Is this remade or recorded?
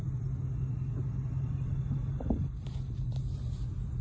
recorded